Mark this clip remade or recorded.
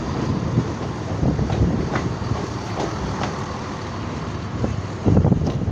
remade